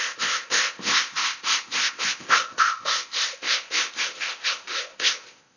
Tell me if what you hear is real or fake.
fake